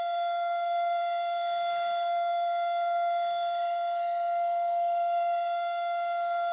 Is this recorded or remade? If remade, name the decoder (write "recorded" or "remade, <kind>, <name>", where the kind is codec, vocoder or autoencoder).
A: remade, codec, SNAC